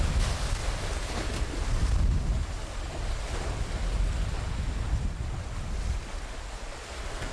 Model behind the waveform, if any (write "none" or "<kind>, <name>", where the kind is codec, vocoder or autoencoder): none